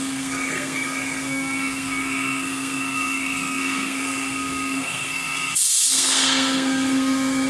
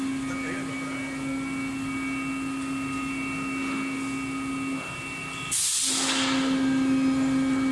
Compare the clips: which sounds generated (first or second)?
first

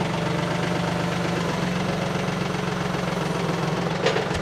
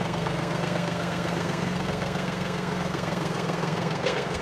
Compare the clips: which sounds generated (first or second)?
second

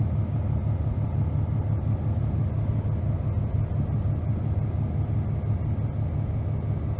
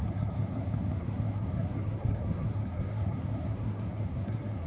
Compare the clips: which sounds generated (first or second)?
second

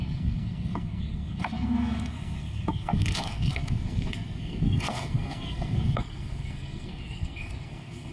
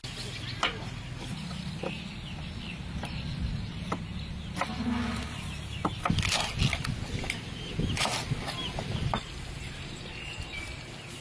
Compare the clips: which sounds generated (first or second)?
first